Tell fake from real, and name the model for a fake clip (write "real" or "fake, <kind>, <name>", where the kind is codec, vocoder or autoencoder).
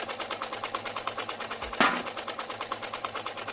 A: real